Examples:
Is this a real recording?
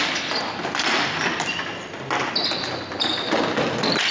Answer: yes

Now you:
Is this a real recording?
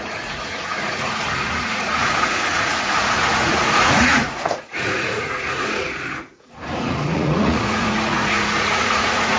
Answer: no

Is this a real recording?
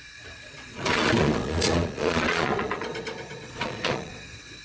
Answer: no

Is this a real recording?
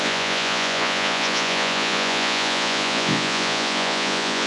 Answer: no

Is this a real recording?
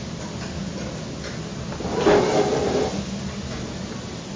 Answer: yes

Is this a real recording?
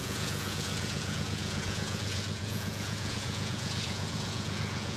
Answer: no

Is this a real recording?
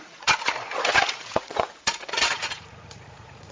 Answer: no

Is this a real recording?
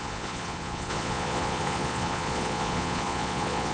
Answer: no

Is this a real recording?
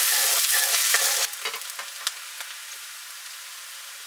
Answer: yes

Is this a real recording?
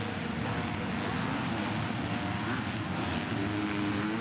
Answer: yes